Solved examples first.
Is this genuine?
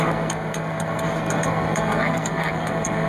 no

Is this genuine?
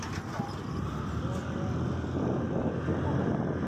yes